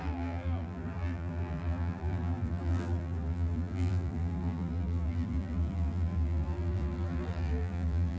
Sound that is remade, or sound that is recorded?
remade